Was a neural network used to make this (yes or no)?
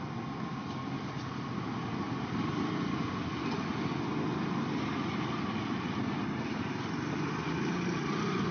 no